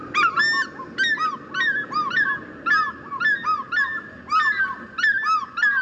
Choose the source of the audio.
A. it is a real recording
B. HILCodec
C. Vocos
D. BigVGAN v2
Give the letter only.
A